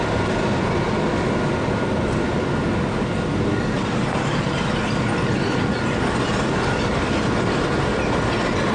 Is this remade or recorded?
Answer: recorded